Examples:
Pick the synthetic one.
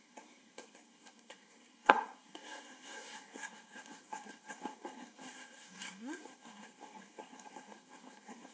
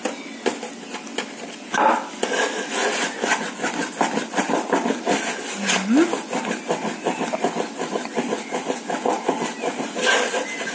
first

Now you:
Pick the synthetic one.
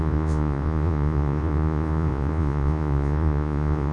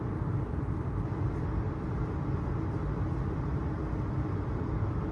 first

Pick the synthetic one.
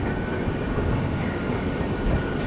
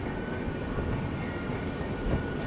first